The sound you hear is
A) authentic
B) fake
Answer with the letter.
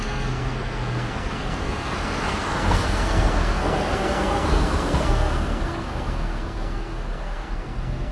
B